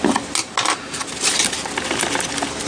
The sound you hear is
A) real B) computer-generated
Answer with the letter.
A